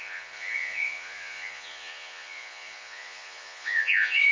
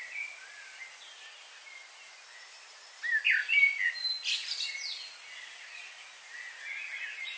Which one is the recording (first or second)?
second